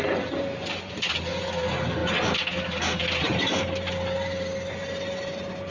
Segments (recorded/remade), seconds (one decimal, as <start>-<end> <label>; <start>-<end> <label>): 0.0-5.7 recorded